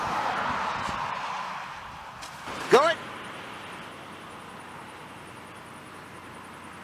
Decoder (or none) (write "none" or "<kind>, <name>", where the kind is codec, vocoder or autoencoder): none